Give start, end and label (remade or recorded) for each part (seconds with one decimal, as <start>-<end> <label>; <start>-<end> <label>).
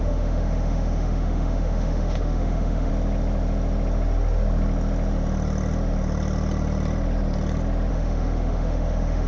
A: 0.0-2.9 remade; 2.9-7.9 recorded; 7.9-9.3 remade